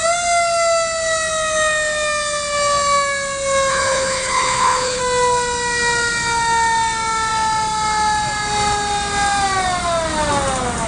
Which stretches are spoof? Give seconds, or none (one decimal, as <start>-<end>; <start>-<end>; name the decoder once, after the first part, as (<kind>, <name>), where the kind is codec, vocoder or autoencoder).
3.7-5.0 (codec, HILCodec)